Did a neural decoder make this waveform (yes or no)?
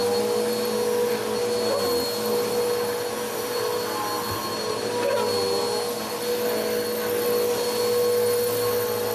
no